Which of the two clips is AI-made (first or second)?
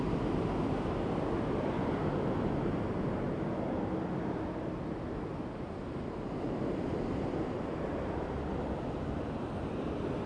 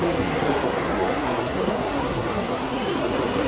second